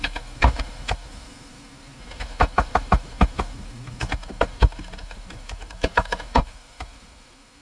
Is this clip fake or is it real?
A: fake